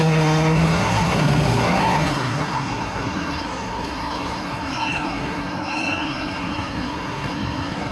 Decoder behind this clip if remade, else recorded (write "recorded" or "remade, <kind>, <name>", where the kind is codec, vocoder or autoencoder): remade, codec, SNAC